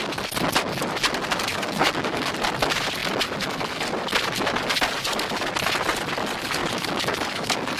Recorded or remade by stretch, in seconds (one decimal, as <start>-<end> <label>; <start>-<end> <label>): 0.0-1.5 recorded; 1.5-2.3 remade; 2.3-6.6 recorded; 6.6-7.8 remade